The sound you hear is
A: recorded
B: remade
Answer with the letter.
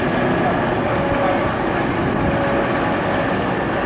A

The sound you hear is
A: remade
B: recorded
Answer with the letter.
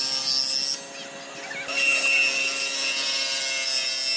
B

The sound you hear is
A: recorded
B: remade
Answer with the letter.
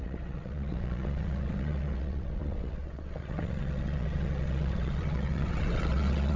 B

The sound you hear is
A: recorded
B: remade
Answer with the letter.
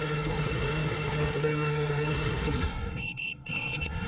B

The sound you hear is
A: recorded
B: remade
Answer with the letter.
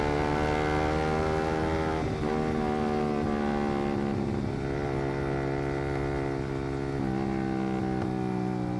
A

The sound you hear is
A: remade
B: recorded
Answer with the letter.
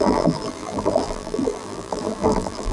A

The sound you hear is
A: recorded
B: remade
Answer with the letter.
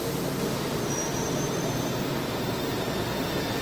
A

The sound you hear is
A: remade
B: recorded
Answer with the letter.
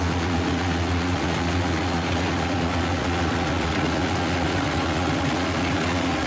A